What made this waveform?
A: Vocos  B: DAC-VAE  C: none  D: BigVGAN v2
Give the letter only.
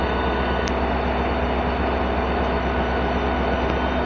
C